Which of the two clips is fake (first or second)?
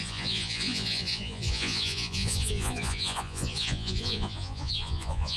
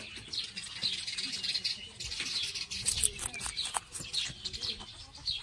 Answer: first